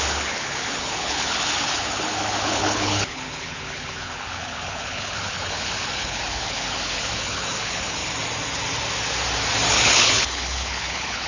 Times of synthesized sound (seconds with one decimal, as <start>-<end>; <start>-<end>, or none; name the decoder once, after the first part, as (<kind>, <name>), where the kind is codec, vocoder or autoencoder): 0.0-8.0 (codec, HILCodec); 9.7-11.3